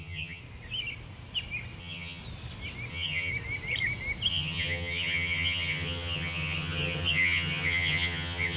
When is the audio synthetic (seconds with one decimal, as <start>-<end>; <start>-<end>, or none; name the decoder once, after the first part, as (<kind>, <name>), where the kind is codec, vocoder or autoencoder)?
0.0-0.4 (vocoder, HiFi-GAN); 1.8-2.2; 2.9-3.3; 4.3-8.6